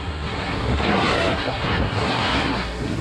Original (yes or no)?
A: no